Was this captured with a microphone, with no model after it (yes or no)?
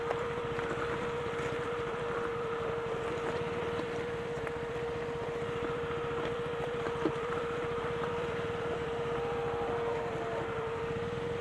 no